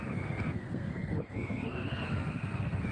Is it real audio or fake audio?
fake